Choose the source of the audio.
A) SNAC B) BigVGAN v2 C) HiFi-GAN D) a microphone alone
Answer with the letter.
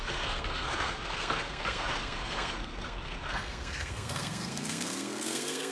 A